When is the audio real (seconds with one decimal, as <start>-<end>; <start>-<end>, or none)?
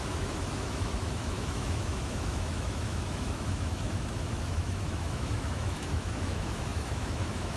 none